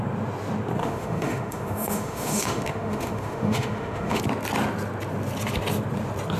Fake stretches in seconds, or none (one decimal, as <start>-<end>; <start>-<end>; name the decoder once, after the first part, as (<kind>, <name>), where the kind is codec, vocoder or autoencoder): 0.8-4.2 (autoencoder, DAC-VAE)